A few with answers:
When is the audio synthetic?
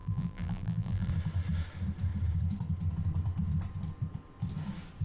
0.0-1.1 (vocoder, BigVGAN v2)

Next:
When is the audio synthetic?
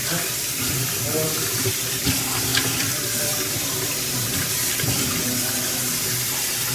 0.0-2.0 (vocoder, BigVGAN v2); 2.5-5.2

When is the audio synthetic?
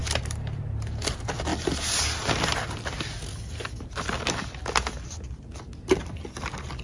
0.0-0.6 (vocoder, BigVGAN v2)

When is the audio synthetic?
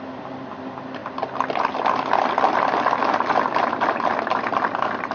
0.0-1.0 (vocoder, BigVGAN v2); 3.6-5.1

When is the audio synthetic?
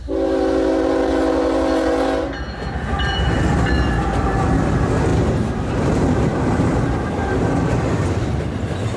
6.3-9.0 (vocoder, BigVGAN v2)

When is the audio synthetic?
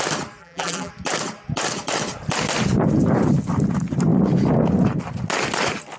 0.4-0.9 (vocoder, BigVGAN v2)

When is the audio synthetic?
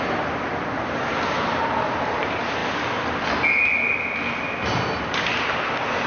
0.0-2.6 (vocoder, BigVGAN v2); 5.1-6.1